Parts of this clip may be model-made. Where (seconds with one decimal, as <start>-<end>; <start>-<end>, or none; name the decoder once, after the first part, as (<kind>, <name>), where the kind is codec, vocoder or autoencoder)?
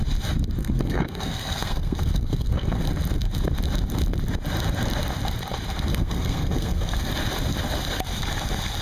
0.6-2.8 (codec, SNAC); 5.9-7.1